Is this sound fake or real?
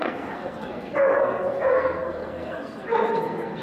fake